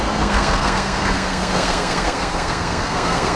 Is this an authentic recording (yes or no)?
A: no